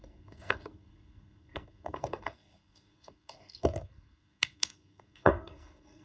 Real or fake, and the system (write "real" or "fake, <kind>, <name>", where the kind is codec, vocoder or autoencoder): fake, codec, SNAC